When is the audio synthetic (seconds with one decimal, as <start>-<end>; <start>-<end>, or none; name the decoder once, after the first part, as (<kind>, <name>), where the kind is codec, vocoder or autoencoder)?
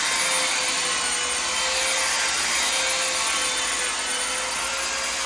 none